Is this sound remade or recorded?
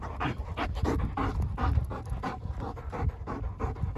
recorded